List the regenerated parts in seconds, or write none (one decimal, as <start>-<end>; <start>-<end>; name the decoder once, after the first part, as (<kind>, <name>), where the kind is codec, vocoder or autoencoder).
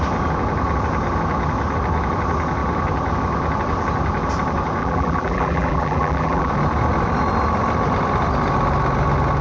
4.8-6.5 (vocoder, BigVGAN v2)